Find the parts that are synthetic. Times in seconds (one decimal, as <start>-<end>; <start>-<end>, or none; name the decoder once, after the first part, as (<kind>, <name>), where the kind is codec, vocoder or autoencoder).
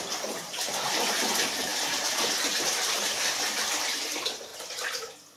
0.0-4.5 (vocoder, BigVGAN v2)